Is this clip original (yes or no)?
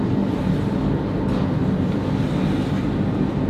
yes